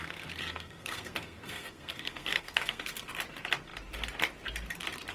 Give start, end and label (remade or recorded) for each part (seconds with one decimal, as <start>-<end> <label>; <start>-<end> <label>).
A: 0.0-3.1 remade; 3.1-5.1 recorded